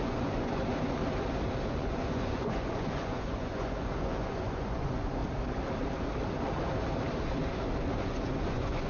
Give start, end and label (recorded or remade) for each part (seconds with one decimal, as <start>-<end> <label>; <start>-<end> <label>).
0.0-1.0 remade; 1.0-1.7 recorded; 1.7-5.2 remade; 5.2-8.0 recorded; 8.0-8.9 remade